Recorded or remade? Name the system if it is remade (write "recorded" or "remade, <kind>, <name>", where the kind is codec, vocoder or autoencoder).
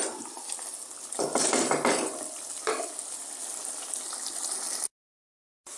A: recorded